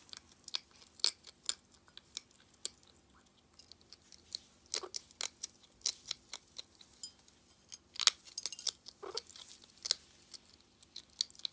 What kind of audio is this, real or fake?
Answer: real